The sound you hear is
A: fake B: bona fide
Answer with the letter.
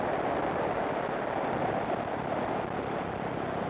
B